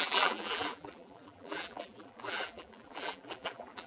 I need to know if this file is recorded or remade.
remade